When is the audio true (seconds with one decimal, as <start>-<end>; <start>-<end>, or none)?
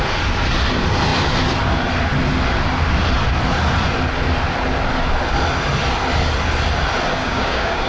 0.0-7.2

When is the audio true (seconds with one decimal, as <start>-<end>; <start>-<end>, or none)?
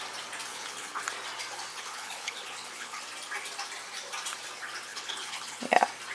0.0-0.5; 1.0-1.7; 3.0-4.9; 5.6-6.1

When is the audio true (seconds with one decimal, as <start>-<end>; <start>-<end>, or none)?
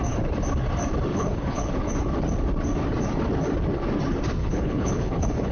0.0-1.1; 1.7-4.4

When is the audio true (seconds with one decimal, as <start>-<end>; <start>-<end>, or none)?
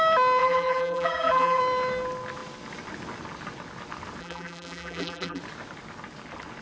0.0-0.4; 1.6-4.2; 5.4-6.6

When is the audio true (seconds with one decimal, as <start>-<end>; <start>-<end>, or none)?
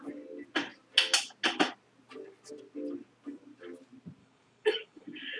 0.0-4.2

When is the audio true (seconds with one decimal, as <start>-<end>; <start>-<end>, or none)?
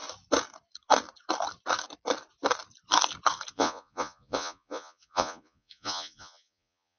0.0-3.5